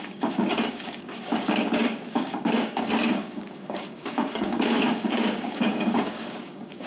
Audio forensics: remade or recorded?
remade